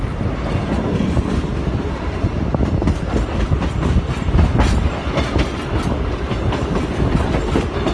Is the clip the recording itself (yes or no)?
yes